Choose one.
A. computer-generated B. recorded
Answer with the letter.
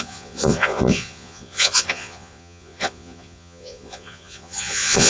A